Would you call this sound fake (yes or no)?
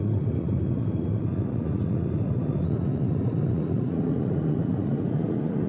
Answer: yes